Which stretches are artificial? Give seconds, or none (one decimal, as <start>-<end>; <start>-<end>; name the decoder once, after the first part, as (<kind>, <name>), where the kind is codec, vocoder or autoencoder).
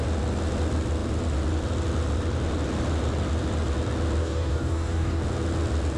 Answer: 4.2-5.2 (codec, DAC)